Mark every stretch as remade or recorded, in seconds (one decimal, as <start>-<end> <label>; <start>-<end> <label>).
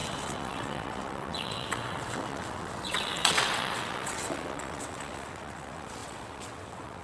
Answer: 0.0-7.0 remade